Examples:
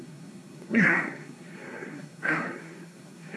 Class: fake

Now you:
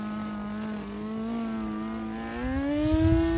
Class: real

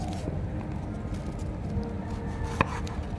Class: real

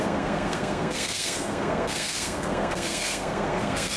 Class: fake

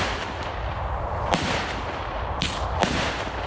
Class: real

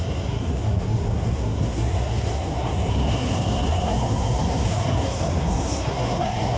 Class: fake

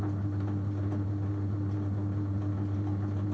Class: real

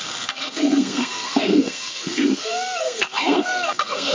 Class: fake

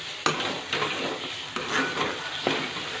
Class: real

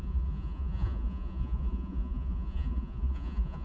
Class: fake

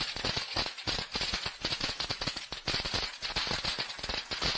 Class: fake